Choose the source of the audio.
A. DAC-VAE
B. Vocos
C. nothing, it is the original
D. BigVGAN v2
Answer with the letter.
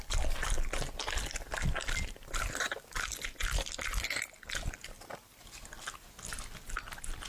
C